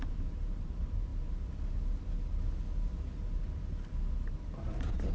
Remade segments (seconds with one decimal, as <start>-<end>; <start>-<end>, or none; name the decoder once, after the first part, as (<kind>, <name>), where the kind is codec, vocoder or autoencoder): 0.0-1.1 (vocoder, BigVGAN v2); 4.2-5.1